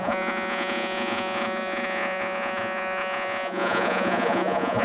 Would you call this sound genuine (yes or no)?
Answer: no